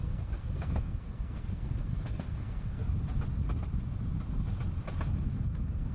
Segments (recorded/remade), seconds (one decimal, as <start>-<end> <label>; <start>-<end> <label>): 0.0-2.8 remade; 2.8-5.2 recorded; 5.2-5.9 remade

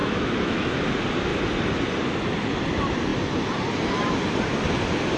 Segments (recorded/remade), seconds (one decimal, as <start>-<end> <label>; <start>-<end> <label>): 0.0-0.8 remade; 0.8-5.2 recorded